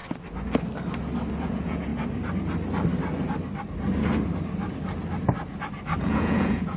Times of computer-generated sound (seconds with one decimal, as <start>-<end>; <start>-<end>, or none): 1.4-1.9; 6.0-6.8